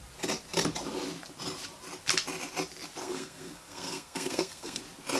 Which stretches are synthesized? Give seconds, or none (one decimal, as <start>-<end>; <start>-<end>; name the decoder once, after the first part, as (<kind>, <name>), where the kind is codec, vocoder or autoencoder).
3.0-4.8 (codec, SNAC)